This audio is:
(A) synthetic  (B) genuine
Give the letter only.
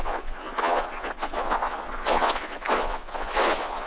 A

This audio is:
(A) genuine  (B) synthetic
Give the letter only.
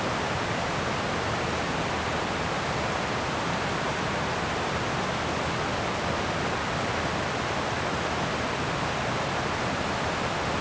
A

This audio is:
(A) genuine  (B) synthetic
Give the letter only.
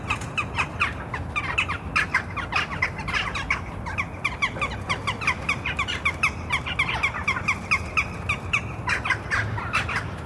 A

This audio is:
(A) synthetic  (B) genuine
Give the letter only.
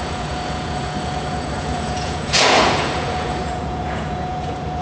A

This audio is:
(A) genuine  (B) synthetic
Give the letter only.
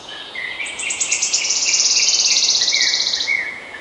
B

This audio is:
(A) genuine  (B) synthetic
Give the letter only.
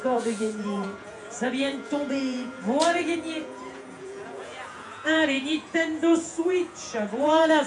B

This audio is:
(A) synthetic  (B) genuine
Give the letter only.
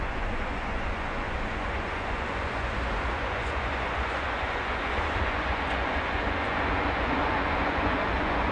A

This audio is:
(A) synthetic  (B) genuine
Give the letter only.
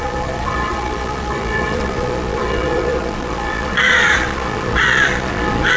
A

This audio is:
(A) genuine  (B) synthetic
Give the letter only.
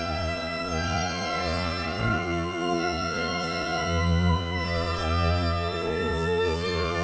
B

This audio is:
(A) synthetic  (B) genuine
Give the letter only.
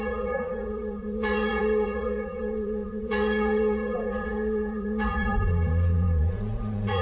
A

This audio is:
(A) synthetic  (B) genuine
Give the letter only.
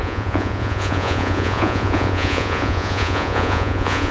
A